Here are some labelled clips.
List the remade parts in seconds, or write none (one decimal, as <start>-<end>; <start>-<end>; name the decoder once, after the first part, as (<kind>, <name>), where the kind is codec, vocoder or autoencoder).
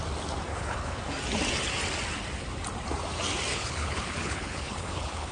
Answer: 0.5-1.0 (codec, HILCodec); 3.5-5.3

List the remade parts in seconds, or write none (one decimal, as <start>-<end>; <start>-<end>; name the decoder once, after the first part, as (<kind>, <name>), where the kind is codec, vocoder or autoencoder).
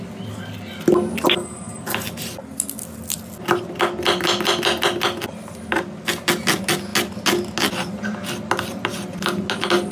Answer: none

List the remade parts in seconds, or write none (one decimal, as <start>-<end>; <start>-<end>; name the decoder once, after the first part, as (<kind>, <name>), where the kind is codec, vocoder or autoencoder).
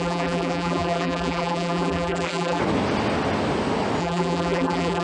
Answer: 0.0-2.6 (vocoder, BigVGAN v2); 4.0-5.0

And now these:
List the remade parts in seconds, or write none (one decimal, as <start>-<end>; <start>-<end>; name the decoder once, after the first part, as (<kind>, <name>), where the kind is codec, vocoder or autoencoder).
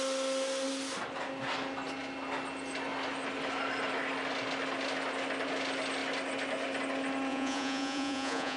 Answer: 7.3-8.6 (vocoder, Vocos)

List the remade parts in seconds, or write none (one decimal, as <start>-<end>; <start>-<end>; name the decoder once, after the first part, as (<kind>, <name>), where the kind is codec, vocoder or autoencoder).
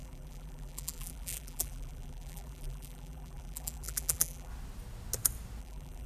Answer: 0.0-4.5 (vocoder, BigVGAN v2); 5.6-6.1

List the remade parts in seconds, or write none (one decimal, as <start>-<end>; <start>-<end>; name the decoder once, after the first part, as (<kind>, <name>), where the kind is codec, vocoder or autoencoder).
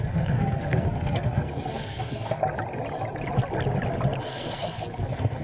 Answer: 0.0-2.4 (codec, SNAC); 4.2-5.4